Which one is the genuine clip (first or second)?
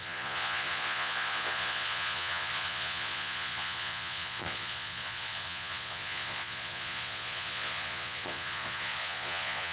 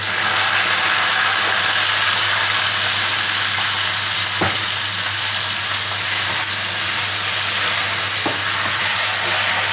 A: second